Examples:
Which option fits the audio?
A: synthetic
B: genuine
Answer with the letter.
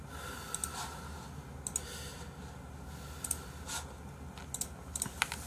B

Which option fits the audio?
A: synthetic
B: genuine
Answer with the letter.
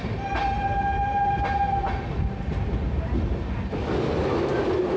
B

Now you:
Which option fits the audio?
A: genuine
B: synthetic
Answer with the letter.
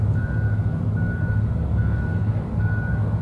B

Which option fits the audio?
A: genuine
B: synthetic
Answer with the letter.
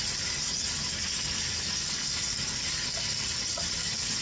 A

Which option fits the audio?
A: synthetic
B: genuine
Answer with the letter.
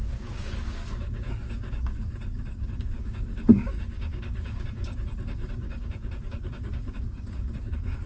A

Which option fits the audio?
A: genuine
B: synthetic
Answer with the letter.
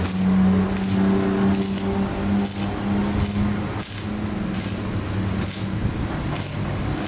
A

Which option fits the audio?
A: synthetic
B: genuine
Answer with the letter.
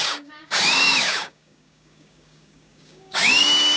A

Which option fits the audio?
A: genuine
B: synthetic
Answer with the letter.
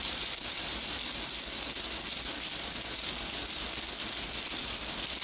A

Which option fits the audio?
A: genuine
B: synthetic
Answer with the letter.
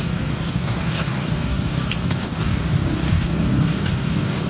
B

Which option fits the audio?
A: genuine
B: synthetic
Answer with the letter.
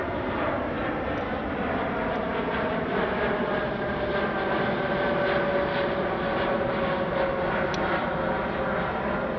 A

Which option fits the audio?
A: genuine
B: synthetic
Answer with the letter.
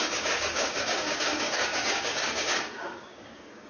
B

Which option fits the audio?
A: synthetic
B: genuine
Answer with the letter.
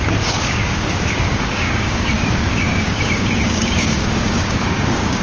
A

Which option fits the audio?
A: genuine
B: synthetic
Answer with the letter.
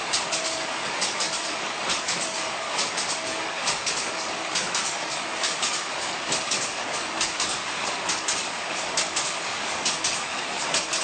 B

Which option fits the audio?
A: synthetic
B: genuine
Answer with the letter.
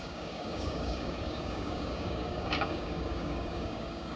A